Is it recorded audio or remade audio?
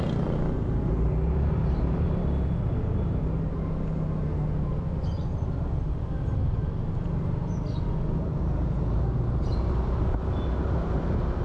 recorded